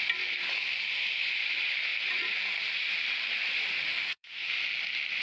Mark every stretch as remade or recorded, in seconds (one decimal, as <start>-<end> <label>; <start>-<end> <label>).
0.0-3.9 recorded; 3.9-4.6 remade; 4.6-5.2 recorded